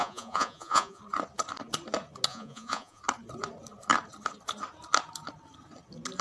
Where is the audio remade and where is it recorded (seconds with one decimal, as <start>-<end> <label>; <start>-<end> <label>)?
0.0-1.0 remade; 1.0-2.3 recorded; 2.3-3.0 remade; 3.0-6.2 recorded